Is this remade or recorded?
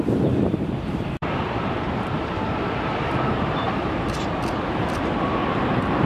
remade